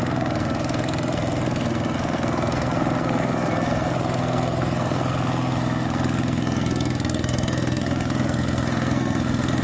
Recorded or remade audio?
remade